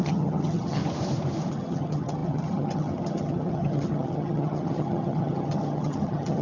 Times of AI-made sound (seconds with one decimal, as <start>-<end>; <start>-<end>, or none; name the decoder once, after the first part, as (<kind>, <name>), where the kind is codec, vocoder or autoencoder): 0.0-0.8 (vocoder, HiFi-GAN); 1.5-6.4

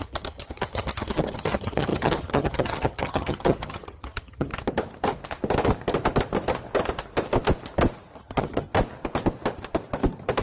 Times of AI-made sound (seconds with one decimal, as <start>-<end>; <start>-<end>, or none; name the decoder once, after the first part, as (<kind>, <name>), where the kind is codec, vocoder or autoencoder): 0.0-4.5 (vocoder, HiFi-GAN); 8.2-8.7

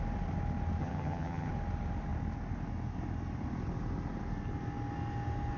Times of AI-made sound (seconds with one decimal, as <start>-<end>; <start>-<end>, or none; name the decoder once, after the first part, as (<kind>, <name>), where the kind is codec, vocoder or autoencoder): 0.8-1.5 (vocoder, HiFi-GAN)

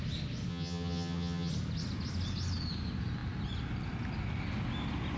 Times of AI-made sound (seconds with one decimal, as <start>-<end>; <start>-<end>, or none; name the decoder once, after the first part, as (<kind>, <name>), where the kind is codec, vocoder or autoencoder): 0.5-1.5 (vocoder, HiFi-GAN)

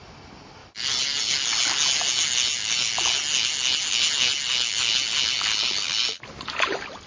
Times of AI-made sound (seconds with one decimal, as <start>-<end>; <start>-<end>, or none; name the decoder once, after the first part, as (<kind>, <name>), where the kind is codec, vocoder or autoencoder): none

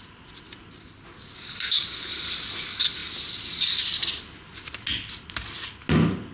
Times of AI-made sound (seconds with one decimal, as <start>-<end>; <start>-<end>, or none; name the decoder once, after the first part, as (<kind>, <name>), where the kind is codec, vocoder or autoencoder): none